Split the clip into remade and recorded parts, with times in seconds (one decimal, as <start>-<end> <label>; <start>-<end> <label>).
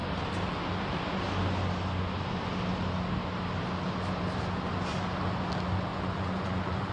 0.0-5.9 recorded; 5.9-6.9 remade